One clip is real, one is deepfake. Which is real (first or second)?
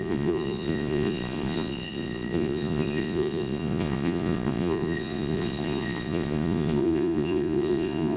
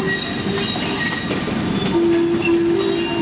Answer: second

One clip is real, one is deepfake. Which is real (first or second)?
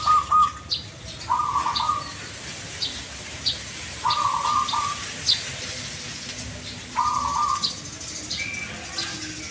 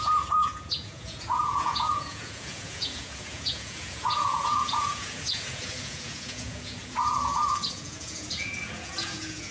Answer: first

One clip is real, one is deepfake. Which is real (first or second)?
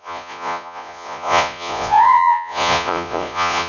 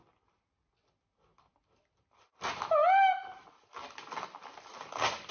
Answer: second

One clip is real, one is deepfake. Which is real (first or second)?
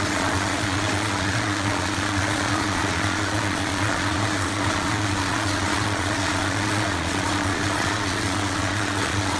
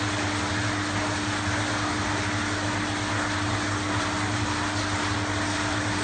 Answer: second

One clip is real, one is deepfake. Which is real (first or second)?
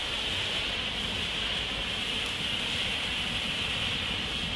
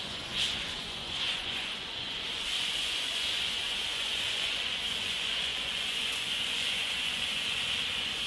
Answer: first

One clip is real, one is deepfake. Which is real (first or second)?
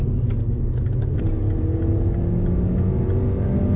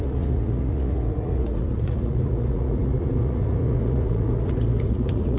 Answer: first